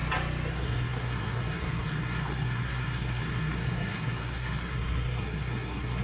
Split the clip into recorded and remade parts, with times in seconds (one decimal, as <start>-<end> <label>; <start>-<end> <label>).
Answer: 0.0-0.5 recorded; 0.5-6.0 remade